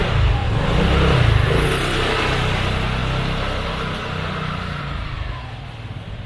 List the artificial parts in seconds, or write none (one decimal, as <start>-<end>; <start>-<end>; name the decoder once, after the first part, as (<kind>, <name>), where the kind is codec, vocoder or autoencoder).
none